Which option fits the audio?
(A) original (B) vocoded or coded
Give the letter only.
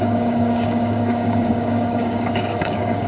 B